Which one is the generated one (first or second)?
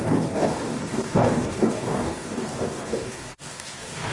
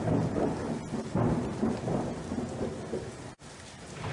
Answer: first